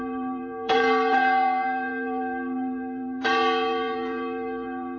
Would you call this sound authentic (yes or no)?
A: no